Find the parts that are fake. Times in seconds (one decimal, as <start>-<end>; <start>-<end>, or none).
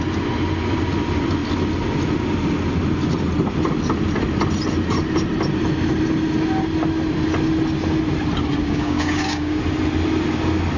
8.6-9.6